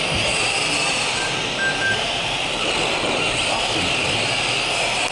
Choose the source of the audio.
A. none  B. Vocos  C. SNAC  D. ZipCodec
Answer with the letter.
A